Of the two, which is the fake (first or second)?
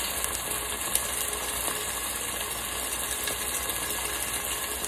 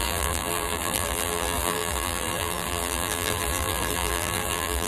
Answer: second